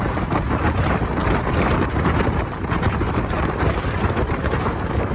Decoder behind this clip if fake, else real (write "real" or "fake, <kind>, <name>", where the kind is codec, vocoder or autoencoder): fake, vocoder, BigVGAN v2